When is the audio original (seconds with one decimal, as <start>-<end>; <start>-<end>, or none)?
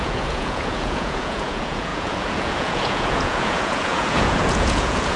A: none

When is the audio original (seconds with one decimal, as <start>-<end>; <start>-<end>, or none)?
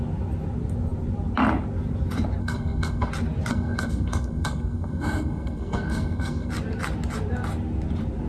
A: 0.0-2.4; 3.1-3.5; 6.5-8.3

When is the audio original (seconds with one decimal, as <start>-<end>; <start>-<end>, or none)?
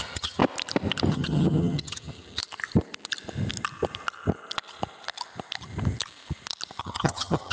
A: 0.4-1.1; 2.4-6.8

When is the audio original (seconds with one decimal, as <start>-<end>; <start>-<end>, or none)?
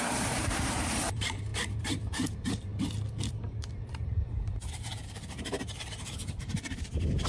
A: 2.7-3.3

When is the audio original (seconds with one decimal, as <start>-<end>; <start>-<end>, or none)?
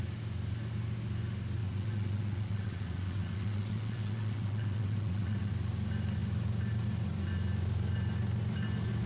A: 0.0-1.6; 5.5-9.1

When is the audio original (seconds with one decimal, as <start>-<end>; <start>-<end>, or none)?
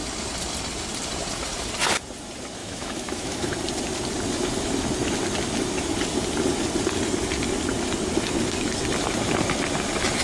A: 0.0-2.6; 3.5-10.2